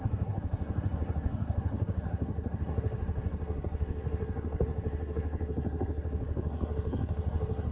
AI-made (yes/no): yes